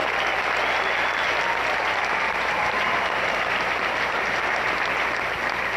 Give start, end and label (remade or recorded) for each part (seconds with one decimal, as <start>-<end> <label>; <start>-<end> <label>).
0.0-1.6 recorded; 1.6-4.6 remade; 4.6-5.8 recorded